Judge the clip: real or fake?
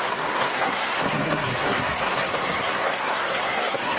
fake